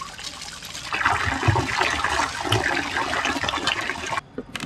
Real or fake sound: real